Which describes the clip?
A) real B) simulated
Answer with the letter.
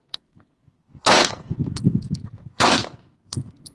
B